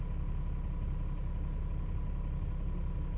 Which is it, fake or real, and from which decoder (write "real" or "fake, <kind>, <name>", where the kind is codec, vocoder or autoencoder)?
real